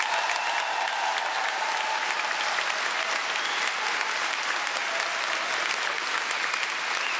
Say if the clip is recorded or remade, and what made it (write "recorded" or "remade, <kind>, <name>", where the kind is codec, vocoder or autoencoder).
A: recorded